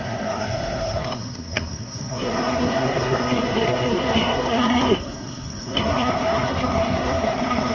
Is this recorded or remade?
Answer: remade